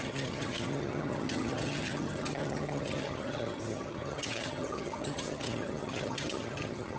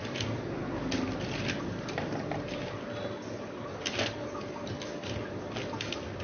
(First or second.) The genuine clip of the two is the second